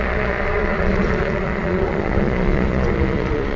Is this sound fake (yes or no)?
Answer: yes